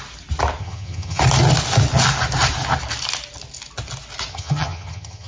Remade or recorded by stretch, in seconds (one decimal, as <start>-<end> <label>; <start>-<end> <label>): 0.0-0.6 recorded; 0.6-1.2 remade; 1.2-4.3 recorded; 4.3-5.3 remade